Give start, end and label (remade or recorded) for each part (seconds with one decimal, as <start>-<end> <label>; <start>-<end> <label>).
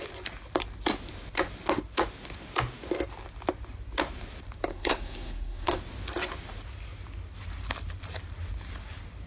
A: 0.0-4.7 recorded; 4.7-5.8 remade; 5.8-9.3 recorded